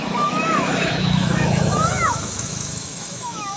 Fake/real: fake